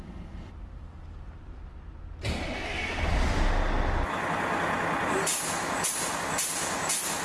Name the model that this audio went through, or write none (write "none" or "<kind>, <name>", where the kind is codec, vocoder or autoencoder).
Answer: none